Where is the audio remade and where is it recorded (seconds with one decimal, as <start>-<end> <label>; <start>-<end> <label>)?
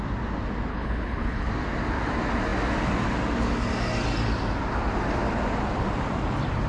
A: 0.0-0.7 recorded; 0.7-1.5 remade; 1.5-6.7 recorded